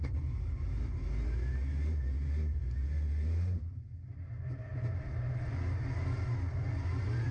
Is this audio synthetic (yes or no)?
no